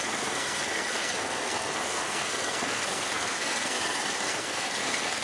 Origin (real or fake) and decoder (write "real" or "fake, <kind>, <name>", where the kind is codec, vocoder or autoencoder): fake, codec, SNAC